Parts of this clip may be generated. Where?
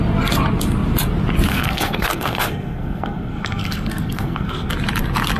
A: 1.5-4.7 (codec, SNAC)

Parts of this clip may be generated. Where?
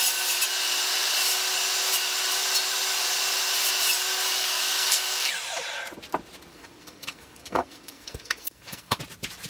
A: 4.4-5.3 (codec, SNAC); 6.5-9.0